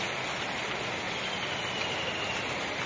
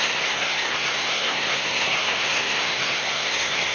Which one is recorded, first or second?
first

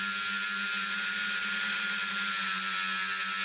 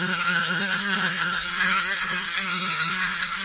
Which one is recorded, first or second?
first